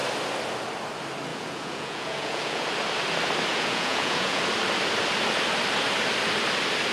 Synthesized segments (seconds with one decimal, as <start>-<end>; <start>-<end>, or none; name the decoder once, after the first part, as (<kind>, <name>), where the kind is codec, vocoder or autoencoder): 1.3-2.7 (vocoder, Vocos); 3.5-4.4